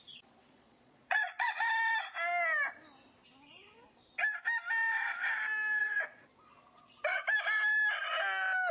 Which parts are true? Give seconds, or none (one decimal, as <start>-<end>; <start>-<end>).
0.0-0.4; 1.6-5.8; 7.0-8.7